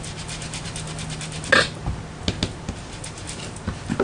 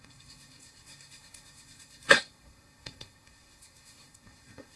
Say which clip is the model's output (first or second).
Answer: second